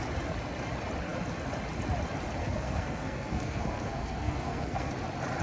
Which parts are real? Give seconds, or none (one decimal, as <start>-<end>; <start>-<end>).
0.0-2.4; 4.9-5.4